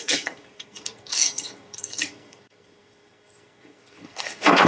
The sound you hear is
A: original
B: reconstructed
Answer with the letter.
B